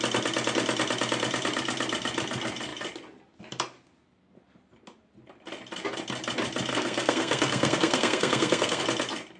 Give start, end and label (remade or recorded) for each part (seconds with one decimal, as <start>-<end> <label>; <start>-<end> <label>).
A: 0.0-6.7 recorded; 6.7-8.8 remade; 8.8-9.4 recorded